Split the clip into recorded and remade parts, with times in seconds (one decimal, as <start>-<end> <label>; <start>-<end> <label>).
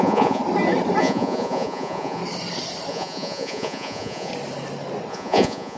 0.0-0.4 remade; 0.4-1.0 recorded; 1.0-2.2 remade; 2.2-2.9 recorded; 2.9-4.3 remade; 4.3-5.1 recorded; 5.1-5.8 remade